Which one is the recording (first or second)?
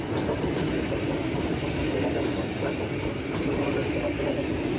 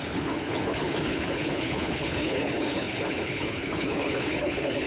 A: first